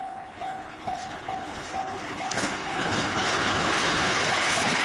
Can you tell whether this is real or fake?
fake